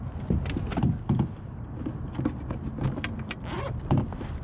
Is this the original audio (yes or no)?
yes